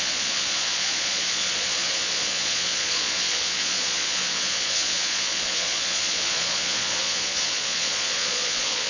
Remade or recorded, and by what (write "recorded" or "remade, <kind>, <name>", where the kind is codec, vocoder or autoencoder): remade, vocoder, Vocos